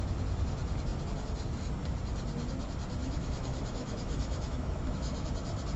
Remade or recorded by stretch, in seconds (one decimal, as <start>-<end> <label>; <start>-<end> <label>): 0.0-3.0 recorded; 3.0-5.3 remade; 5.3-5.8 recorded